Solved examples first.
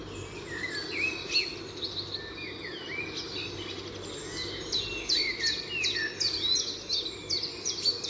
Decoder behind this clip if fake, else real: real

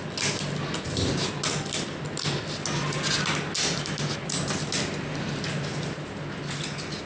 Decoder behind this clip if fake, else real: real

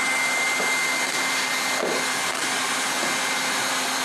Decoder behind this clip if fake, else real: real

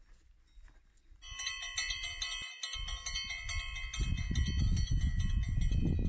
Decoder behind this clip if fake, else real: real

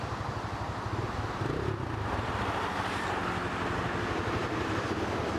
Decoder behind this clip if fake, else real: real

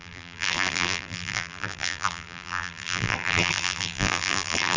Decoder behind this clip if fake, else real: fake, vocoder, BigVGAN v2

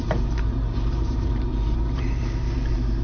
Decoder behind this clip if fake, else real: fake, vocoder, BigVGAN v2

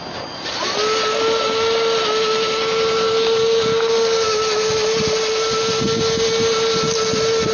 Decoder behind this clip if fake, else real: real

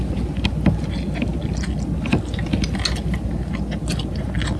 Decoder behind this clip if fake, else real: real